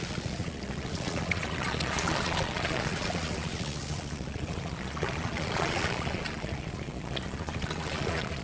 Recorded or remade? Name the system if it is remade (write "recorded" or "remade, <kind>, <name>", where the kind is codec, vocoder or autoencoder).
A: remade, vocoder, Vocos